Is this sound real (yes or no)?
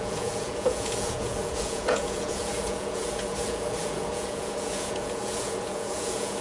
no